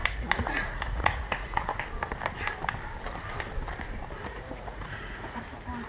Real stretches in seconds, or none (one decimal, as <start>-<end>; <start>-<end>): 1.8-4.3; 5.4-5.9